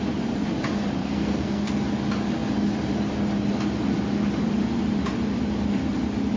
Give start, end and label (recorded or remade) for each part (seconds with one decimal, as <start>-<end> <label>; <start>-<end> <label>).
0.0-1.0 recorded; 1.0-1.7 remade; 1.7-6.4 recorded